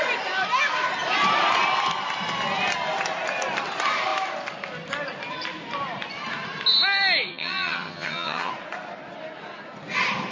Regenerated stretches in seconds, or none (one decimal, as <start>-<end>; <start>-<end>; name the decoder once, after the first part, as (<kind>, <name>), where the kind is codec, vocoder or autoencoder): 7.3-8.5 (vocoder, HiFi-GAN)